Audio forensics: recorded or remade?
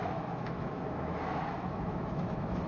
remade